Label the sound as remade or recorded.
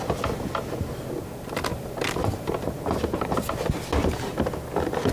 recorded